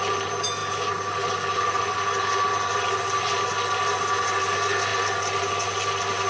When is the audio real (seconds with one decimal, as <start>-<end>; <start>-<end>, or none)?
0.0-6.3